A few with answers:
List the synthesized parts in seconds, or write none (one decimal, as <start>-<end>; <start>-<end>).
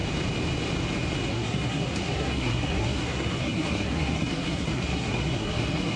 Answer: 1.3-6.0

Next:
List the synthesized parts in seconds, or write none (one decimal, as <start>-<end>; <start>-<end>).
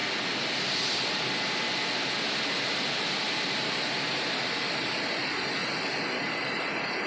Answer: none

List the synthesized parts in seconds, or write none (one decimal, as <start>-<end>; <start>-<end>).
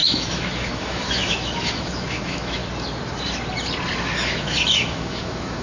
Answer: 0.0-2.6; 4.0-5.6